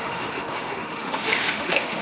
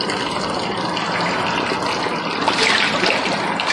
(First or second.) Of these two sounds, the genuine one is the second